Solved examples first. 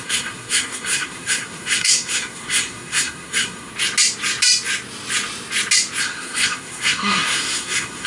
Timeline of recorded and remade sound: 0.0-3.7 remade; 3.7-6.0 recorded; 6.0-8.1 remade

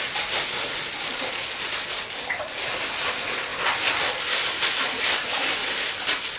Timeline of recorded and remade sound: 0.0-6.4 recorded

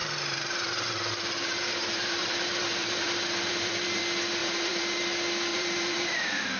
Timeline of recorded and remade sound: 0.0-4.0 remade; 4.0-4.4 recorded; 4.4-5.0 remade; 5.0-5.5 recorded; 5.5-6.6 remade

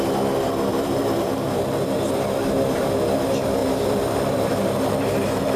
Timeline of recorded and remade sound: 0.0-0.7 recorded; 0.7-2.1 remade; 2.1-3.6 recorded; 3.6-5.6 remade